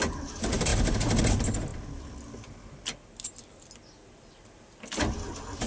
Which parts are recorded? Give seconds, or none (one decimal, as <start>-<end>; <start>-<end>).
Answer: 0.0-5.7